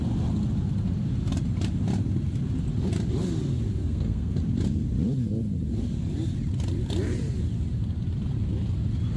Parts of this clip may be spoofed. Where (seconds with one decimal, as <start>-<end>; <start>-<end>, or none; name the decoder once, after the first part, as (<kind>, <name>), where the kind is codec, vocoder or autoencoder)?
3.8-4.4 (codec, SNAC)